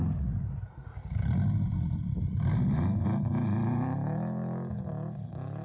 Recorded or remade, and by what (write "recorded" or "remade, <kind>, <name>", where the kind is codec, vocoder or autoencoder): recorded